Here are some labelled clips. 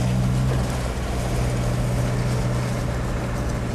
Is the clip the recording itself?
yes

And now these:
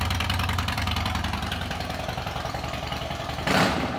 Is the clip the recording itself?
no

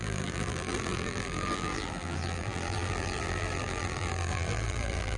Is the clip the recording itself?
no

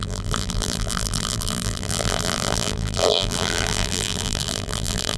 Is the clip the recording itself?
no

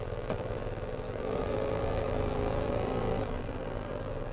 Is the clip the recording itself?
no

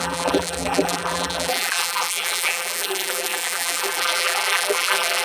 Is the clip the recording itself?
no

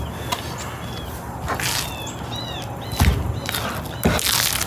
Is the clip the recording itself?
yes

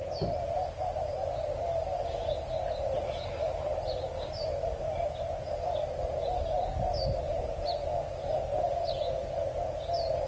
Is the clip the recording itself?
yes